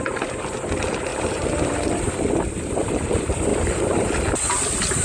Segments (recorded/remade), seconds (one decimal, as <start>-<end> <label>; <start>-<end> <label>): 0.0-1.1 recorded; 1.1-2.1 remade; 2.1-3.5 recorded; 3.5-4.1 remade; 4.1-5.0 recorded